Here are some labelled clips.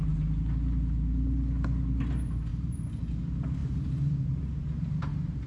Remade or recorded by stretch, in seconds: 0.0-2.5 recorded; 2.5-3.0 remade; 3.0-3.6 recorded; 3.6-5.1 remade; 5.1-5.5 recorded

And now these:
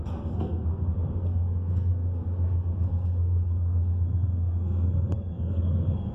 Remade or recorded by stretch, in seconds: 0.0-6.1 remade

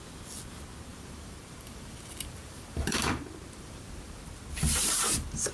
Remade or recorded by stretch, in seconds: 0.0-0.9 recorded; 0.9-4.2 remade; 4.2-5.5 recorded